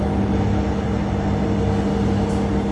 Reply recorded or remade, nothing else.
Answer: recorded